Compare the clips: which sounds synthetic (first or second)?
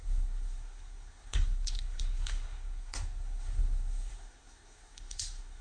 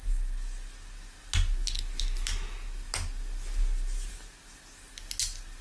first